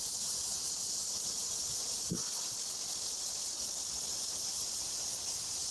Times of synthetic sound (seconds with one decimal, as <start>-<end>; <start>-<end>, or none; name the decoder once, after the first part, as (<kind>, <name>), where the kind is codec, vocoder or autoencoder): 0.0-2.2 (vocoder, BigVGAN v2); 4.1-5.7